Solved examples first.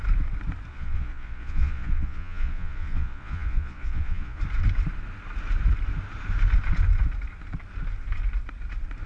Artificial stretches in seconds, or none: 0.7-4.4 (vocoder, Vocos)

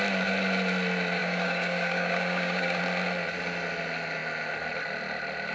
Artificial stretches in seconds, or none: 1.2-2.8 (codec, DAC)

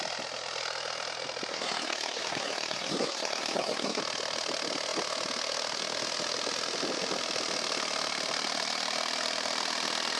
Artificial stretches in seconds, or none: 1.5-4.0 (codec, SNAC)

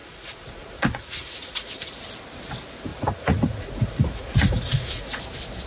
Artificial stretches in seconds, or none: 0.0-2.0 (vocoder, Vocos); 2.9-5.2